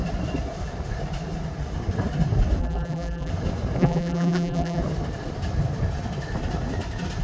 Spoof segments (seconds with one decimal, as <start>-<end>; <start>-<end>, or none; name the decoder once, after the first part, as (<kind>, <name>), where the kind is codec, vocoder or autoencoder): 2.6-3.3 (vocoder, BigVGAN v2); 3.8-4.8